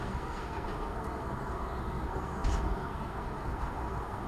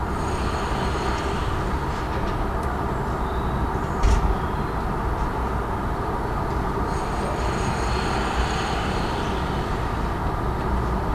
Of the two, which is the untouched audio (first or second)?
second